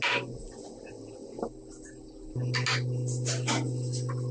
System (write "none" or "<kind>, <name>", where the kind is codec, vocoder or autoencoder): none